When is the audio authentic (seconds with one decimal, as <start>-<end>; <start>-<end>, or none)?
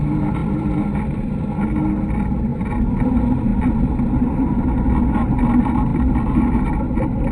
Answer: 0.0-0.4; 1.4-2.5; 3.1-3.5; 5.0-5.9; 6.6-7.3